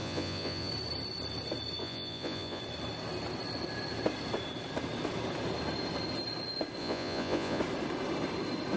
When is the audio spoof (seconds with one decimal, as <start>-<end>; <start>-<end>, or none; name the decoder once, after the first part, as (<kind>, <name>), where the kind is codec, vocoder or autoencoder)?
0.0-0.7 (vocoder, Vocos); 1.8-2.6; 6.8-7.6